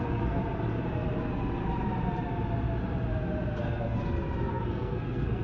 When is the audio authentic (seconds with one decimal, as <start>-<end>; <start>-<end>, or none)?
0.4-3.6; 4.0-4.5